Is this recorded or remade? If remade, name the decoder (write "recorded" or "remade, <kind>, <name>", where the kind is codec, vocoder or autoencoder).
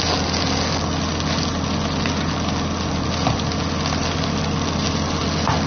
recorded